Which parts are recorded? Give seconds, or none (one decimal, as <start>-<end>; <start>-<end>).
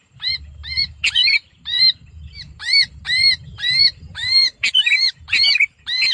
none